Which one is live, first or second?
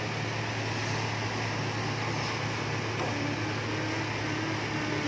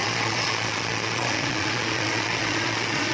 first